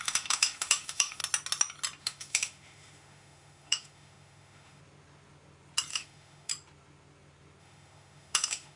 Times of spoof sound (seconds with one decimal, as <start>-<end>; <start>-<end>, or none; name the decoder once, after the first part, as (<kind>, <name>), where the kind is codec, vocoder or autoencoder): 0.0-1.2 (autoencoder, DAC-VAE); 2.0-4.8; 5.9-6.5; 7.6-8.8